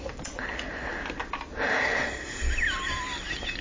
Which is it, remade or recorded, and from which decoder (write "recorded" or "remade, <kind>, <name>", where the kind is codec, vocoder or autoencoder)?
recorded